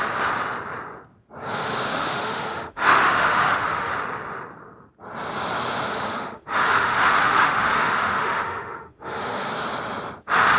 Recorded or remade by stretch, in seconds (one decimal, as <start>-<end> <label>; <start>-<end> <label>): 0.0-1.4 recorded; 1.4-3.9 remade; 3.9-5.9 recorded; 5.9-9.5 remade; 9.5-10.6 recorded